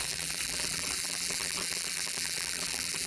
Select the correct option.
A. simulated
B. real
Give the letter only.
A